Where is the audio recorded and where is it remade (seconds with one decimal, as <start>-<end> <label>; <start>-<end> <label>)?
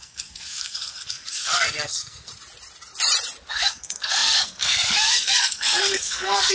0.0-2.3 remade; 2.3-3.5 recorded; 3.5-6.5 remade